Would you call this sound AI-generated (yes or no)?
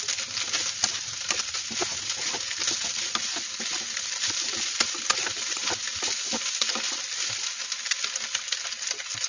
no